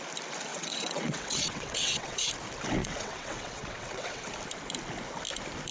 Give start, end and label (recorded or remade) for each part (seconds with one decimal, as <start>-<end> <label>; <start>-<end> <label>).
0.0-0.5 recorded; 0.5-2.3 remade; 2.3-2.8 recorded; 2.8-4.3 remade; 4.3-5.7 recorded